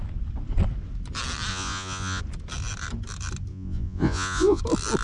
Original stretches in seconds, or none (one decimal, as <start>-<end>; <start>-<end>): 0.0-1.5; 2.2-3.5; 4.6-5.0